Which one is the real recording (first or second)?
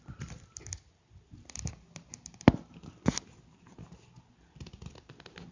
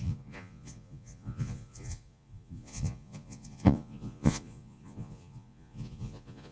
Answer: first